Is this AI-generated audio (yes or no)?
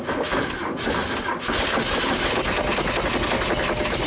no